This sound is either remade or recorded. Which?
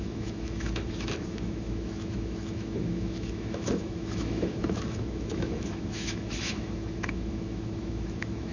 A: remade